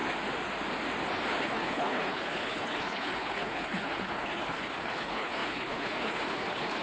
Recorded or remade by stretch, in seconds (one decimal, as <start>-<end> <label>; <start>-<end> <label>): 0.0-1.4 recorded; 1.4-6.8 remade